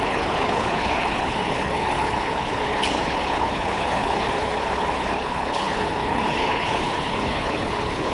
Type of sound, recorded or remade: remade